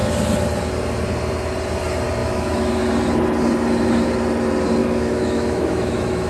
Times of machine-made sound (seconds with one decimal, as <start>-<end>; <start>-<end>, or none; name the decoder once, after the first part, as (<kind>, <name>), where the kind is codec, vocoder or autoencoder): 2.2-2.8 (autoencoder, DAC-VAE); 4.8-6.3